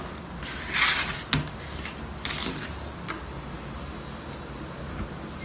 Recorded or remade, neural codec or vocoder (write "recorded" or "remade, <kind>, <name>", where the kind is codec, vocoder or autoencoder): recorded